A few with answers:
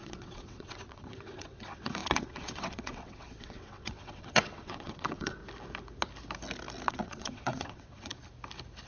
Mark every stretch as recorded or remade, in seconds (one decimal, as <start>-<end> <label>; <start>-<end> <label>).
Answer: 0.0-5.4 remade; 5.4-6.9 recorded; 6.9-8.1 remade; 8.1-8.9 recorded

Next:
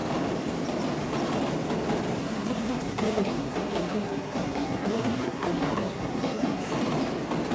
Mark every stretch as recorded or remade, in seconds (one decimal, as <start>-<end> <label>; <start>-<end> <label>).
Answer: 0.0-2.2 recorded; 2.2-6.7 remade; 6.7-7.5 recorded

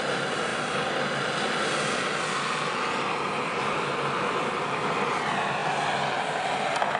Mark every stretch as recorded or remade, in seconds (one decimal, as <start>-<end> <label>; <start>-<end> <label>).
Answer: 0.0-7.0 recorded

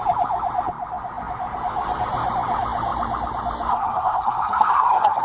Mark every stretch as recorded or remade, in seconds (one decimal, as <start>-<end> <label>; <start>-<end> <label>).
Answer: 0.0-3.7 recorded; 3.7-5.2 remade